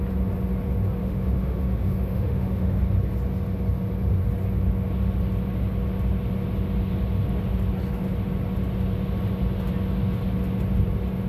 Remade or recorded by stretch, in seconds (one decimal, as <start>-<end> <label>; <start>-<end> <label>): 0.0-1.0 recorded; 1.0-2.8 remade; 2.8-11.3 recorded